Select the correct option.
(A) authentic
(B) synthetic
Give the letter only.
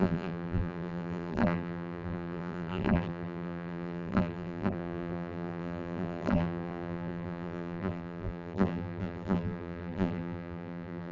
B